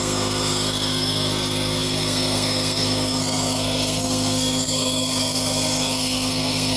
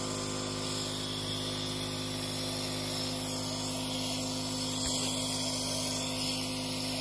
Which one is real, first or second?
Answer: second